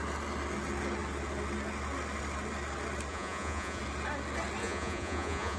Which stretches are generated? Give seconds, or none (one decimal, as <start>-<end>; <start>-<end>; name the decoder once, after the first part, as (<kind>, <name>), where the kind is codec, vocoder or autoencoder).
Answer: 3.1-3.8 (vocoder, Vocos); 4.6-5.6